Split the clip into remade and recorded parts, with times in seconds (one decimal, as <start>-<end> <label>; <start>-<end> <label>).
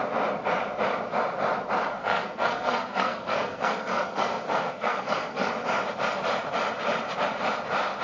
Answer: 0.0-2.0 recorded; 2.0-5.5 remade; 5.5-8.0 recorded